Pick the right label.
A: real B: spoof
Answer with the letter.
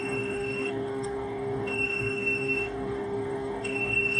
B